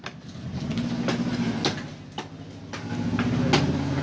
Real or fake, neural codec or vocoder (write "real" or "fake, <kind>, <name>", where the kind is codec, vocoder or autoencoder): real